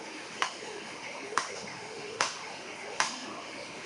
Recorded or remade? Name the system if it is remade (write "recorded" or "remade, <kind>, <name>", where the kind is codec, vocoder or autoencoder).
remade, autoencoder, DAC-VAE